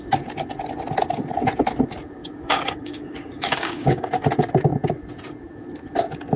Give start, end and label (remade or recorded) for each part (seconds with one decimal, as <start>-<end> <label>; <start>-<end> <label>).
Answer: 0.0-2.2 recorded; 2.2-4.1 remade; 4.1-6.4 recorded